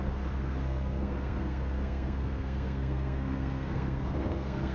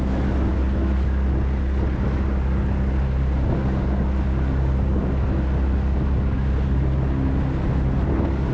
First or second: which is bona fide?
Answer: second